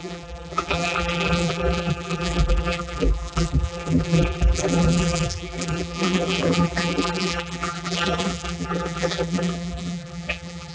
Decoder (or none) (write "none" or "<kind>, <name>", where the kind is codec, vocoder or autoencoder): vocoder, BigVGAN v2